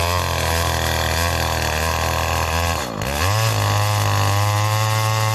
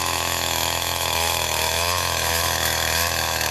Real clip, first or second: first